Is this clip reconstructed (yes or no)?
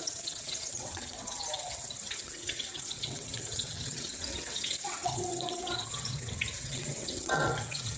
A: yes